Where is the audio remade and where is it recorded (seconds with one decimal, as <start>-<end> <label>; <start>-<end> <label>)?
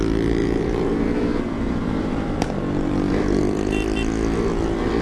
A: 0.0-0.4 recorded; 0.4-3.4 remade; 3.4-5.0 recorded